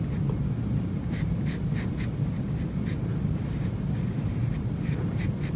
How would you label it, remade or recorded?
recorded